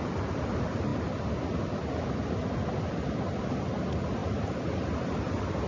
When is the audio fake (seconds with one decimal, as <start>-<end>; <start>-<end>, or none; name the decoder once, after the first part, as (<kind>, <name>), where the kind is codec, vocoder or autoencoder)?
none